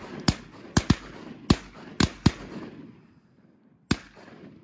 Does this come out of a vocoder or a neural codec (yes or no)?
no